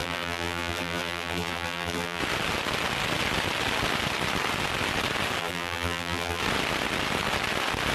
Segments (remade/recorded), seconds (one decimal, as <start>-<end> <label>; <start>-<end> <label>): 0.0-2.2 remade; 2.2-5.4 recorded; 5.4-6.4 remade; 6.4-7.9 recorded